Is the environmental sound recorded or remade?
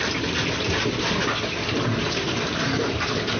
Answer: recorded